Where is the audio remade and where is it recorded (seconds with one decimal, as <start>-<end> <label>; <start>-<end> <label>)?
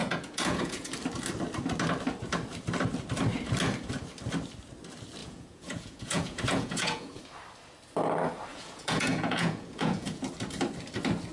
0.0-0.9 remade; 0.9-5.2 recorded; 5.2-7.2 remade; 7.2-8.5 recorded; 8.5-10.2 remade; 10.2-11.3 recorded